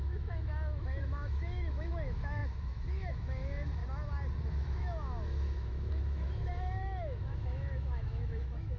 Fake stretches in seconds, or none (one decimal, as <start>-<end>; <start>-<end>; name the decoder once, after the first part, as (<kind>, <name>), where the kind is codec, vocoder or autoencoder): 0.0-3.8 (autoencoder, DAC-VAE); 4.5-8.8

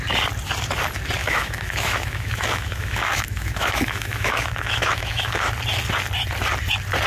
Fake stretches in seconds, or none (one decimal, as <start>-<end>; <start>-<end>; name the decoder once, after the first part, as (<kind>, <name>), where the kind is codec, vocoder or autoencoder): 1.2-5.5 (autoencoder, DAC-VAE)

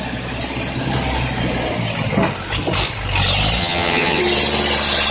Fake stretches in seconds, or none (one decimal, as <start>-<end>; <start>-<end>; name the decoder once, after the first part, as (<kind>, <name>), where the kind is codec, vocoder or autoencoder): 3.6-4.2 (vocoder, HiFi-GAN)

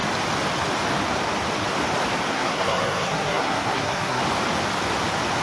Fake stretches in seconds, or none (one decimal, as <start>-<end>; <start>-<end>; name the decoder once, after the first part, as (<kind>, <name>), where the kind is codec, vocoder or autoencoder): 2.3-4.2 (codec, SNAC)

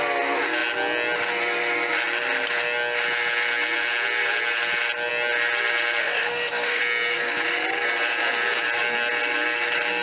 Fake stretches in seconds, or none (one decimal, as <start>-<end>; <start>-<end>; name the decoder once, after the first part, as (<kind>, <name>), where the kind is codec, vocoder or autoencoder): 6.0-6.8 (autoencoder, DAC-VAE)

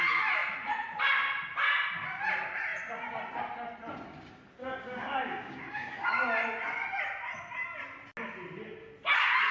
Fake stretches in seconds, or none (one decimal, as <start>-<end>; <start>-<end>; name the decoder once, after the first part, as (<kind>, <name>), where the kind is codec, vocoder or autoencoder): 4.6-6.1 (codec, DAC)